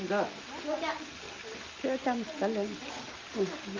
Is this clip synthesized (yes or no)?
no